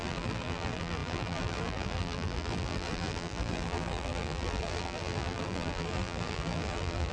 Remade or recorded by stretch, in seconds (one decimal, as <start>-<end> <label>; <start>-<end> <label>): 0.0-7.1 remade